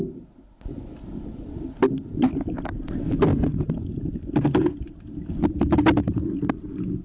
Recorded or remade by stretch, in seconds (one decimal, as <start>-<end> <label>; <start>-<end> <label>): 0.0-7.0 recorded